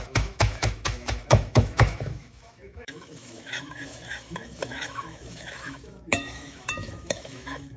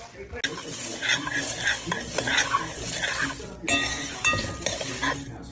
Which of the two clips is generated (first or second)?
first